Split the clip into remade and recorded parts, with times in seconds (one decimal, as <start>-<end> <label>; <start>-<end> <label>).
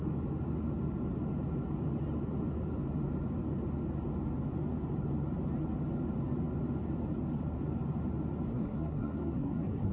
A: 0.0-8.5 recorded; 8.5-9.9 remade